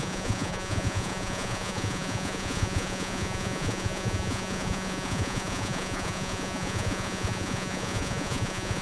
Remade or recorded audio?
remade